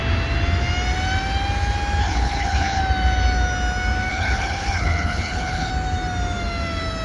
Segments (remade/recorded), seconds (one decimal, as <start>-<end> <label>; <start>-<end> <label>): 0.0-2.0 recorded; 2.0-2.8 remade; 2.8-4.1 recorded; 4.1-5.7 remade; 5.7-7.0 recorded